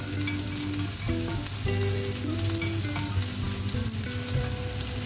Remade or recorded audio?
recorded